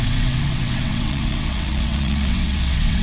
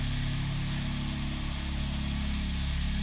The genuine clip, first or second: second